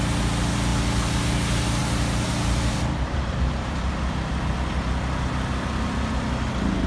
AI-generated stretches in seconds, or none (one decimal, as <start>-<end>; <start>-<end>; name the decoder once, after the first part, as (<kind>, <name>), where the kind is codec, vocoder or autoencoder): 1.8-3.9 (vocoder, BigVGAN v2)